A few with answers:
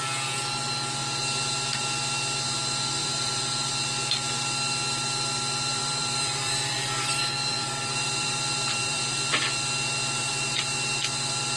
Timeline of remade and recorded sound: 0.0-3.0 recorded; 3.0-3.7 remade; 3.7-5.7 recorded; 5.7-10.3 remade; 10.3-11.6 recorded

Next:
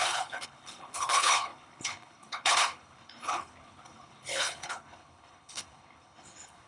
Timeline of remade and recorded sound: 0.0-6.7 remade

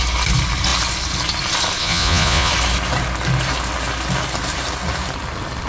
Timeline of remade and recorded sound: 0.0-1.8 recorded; 1.8-2.5 remade; 2.5-5.7 recorded